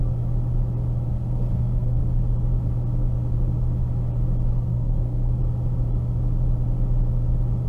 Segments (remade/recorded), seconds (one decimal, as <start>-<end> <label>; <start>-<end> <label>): 0.0-1.1 recorded; 1.1-2.0 remade; 2.0-4.5 recorded; 4.5-5.4 remade; 5.4-7.7 recorded